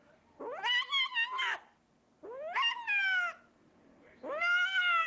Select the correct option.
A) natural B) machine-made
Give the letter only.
A